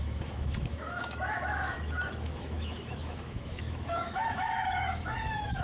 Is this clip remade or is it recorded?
remade